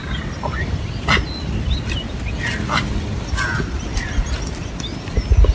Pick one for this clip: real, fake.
real